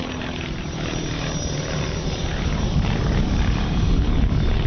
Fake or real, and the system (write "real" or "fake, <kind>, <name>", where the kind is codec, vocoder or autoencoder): fake, vocoder, BigVGAN v2